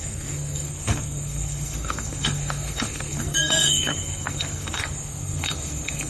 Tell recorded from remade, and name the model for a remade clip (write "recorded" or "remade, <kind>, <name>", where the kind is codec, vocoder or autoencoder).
remade, codec, SNAC